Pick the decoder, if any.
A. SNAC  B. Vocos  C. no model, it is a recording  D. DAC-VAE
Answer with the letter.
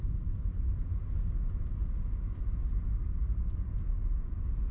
C